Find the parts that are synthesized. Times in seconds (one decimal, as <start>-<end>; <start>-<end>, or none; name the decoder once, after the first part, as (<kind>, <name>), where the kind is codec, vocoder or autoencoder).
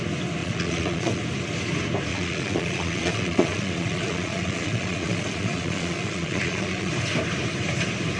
0.4-1.2 (vocoder, Vocos); 2.1-6.9